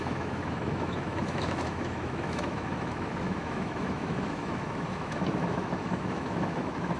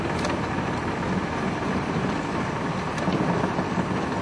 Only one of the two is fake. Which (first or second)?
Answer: first